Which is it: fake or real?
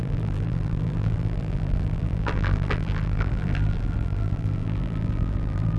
fake